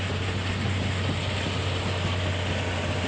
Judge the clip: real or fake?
real